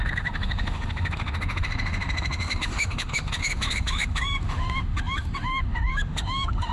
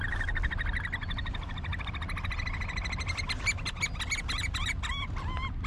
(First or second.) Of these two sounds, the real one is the second